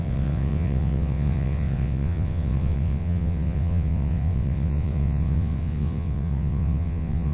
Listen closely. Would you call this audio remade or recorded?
remade